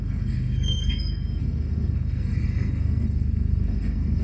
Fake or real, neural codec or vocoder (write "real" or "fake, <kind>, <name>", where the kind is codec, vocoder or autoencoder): fake, codec, SNAC